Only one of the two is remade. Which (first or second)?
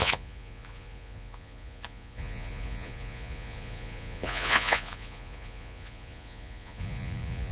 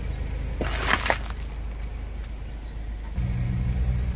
first